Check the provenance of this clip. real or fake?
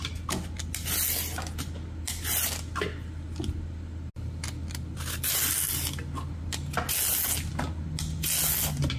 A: real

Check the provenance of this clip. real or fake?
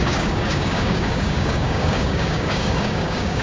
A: fake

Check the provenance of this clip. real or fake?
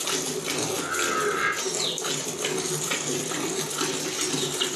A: real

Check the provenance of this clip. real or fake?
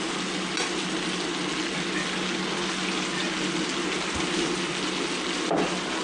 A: real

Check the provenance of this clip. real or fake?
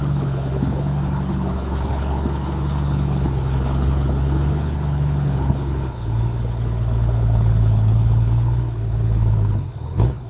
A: fake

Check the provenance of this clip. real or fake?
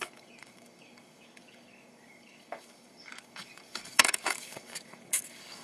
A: fake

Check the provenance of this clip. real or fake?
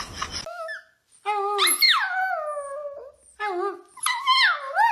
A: real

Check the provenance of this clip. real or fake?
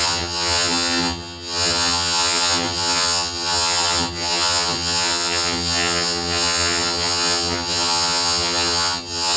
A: fake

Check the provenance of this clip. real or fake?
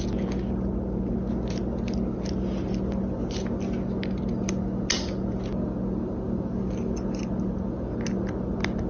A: real